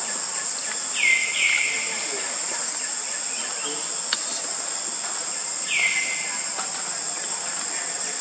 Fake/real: real